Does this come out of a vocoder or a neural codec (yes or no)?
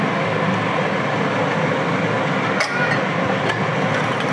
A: no